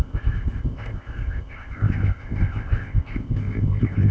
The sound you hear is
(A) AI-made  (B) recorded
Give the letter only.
A